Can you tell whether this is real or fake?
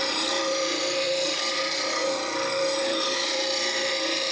fake